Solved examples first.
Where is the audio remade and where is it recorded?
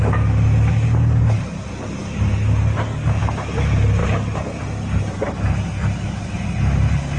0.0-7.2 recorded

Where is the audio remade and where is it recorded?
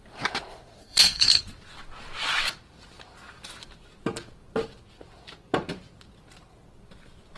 0.0-0.8 recorded; 0.8-1.4 remade; 1.4-7.4 recorded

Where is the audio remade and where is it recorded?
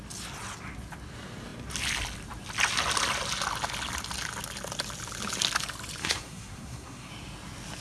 0.0-6.0 recorded; 6.0-7.1 remade; 7.1-7.8 recorded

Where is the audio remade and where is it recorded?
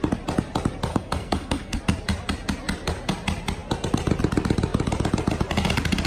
0.0-0.9 recorded; 0.9-1.8 remade; 1.8-6.1 recorded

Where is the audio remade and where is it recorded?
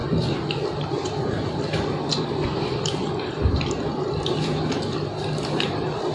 0.0-1.7 remade; 1.7-2.1 recorded; 2.1-6.1 remade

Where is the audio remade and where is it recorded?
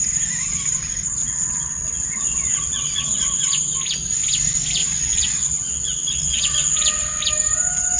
0.0-1.2 recorded; 1.2-3.4 remade; 3.4-4.8 recorded; 4.8-7.2 remade; 7.2-8.0 recorded